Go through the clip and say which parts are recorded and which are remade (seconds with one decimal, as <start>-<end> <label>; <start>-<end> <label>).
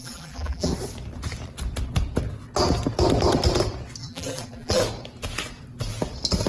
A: 0.0-0.7 remade; 0.7-4.0 recorded; 4.0-4.8 remade; 4.8-6.5 recorded